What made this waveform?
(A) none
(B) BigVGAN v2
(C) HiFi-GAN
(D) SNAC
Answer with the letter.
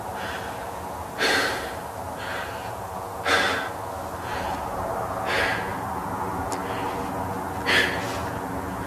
A